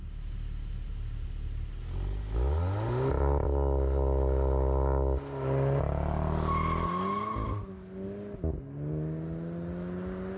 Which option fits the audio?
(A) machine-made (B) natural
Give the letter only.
B